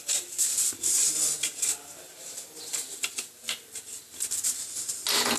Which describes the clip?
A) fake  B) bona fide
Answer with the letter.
B